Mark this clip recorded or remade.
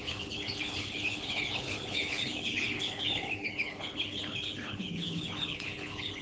remade